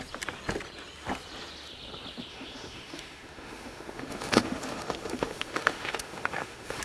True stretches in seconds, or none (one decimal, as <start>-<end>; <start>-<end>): 0.0-2.3